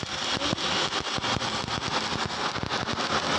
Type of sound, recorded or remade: recorded